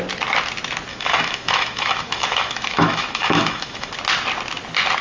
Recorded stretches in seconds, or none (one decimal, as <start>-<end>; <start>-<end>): 0.0-0.9; 3.9-5.0